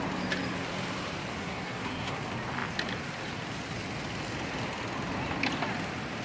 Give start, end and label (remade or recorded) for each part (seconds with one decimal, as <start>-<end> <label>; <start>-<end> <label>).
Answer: 0.0-1.4 recorded; 1.4-2.2 remade; 2.2-6.2 recorded